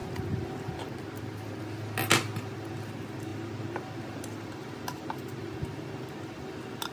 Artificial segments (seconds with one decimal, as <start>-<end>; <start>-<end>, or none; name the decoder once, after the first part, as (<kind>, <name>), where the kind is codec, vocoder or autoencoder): none